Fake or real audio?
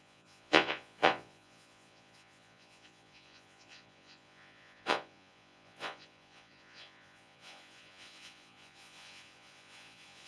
fake